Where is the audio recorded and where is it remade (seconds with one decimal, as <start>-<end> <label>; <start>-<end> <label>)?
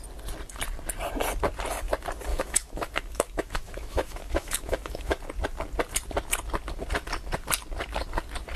0.0-2.3 recorded; 2.3-5.2 remade; 5.2-8.6 recorded